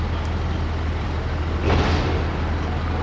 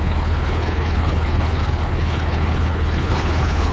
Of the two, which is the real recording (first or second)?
first